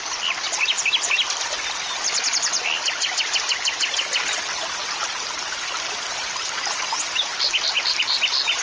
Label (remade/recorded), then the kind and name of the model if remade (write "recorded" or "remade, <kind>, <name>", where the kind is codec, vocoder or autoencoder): recorded